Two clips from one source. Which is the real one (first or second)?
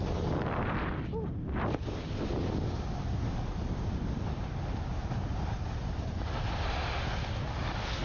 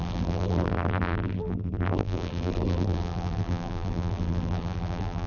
first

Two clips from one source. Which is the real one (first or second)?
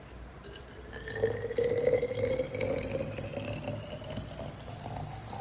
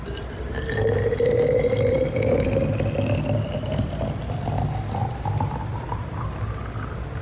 first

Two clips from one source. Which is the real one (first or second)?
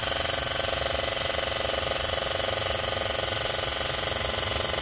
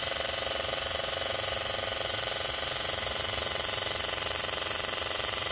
first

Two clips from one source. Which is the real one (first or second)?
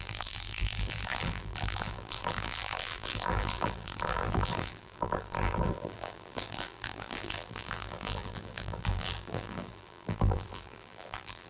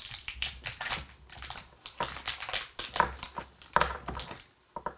second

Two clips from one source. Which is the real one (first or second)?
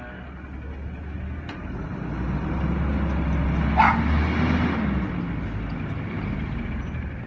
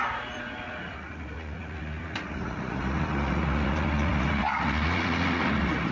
first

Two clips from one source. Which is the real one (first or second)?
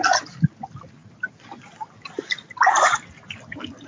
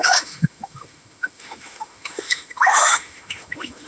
first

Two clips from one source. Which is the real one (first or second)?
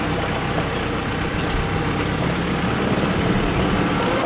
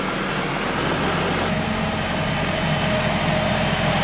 second